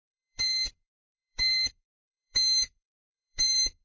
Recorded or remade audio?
remade